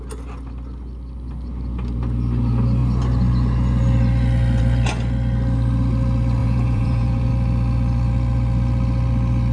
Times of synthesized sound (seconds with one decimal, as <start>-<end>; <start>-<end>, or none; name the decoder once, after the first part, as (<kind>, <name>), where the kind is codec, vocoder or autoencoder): 6.4-7.3 (vocoder, Vocos)